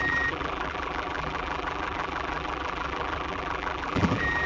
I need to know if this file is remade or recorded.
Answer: remade